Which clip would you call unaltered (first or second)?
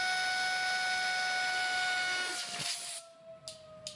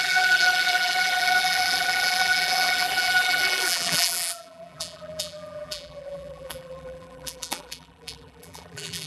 first